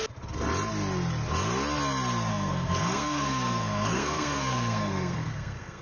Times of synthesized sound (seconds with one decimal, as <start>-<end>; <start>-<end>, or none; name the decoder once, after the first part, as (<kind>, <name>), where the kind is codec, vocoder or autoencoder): 2.3-5.8 (codec, SNAC)